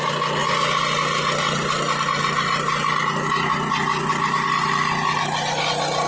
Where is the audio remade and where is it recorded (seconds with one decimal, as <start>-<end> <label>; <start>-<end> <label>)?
0.0-6.1 recorded